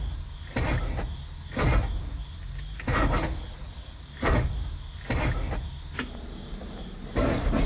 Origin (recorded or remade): recorded